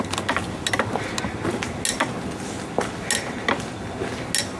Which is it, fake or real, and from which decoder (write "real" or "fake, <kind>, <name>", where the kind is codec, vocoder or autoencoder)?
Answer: real